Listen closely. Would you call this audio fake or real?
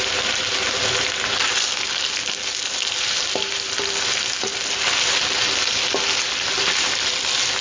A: real